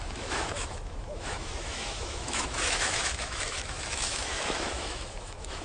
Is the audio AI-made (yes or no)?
yes